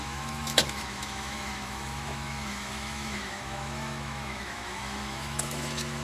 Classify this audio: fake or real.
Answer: fake